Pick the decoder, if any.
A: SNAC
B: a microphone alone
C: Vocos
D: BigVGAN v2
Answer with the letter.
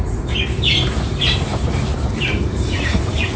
D